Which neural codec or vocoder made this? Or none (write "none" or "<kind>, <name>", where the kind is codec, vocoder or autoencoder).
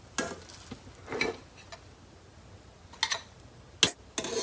none